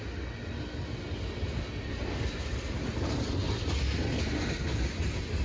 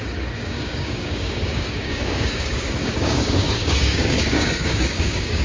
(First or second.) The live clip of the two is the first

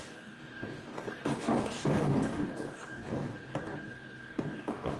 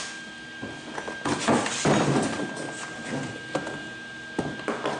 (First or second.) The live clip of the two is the second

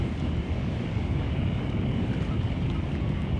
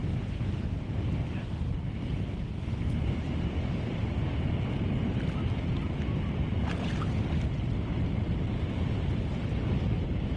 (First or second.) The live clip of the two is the second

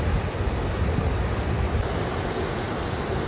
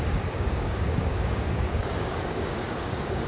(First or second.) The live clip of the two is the first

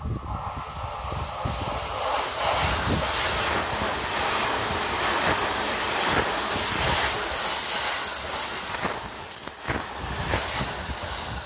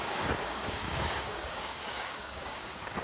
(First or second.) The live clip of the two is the first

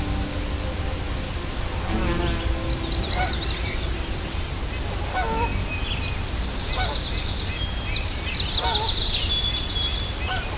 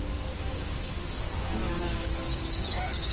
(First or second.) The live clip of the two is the first